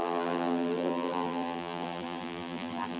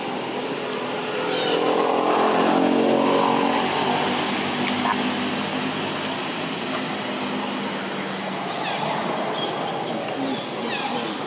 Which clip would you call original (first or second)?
second